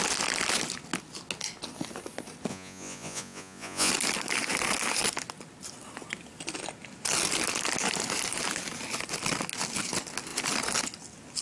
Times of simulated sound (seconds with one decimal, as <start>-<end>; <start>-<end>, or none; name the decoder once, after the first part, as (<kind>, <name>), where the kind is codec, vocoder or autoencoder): 2.5-3.9 (vocoder, Vocos)